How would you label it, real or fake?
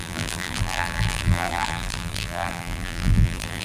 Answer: fake